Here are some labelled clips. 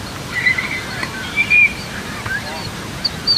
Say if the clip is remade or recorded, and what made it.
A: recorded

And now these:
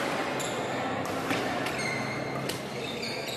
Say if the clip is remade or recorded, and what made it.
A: recorded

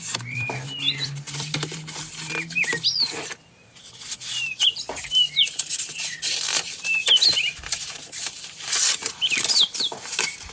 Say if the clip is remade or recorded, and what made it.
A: remade, vocoder, BigVGAN v2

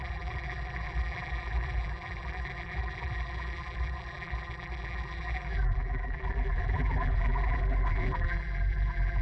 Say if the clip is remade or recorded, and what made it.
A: remade, vocoder, BigVGAN v2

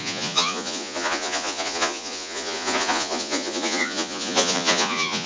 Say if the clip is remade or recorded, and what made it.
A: remade, vocoder, Vocos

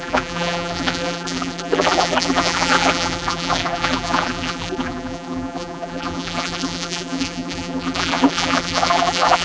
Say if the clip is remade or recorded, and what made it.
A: remade, vocoder, BigVGAN v2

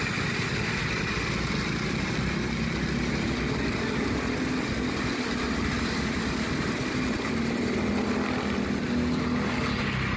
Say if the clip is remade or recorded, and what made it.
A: recorded